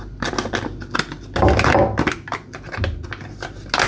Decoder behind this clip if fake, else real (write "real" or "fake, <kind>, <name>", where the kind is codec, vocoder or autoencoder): real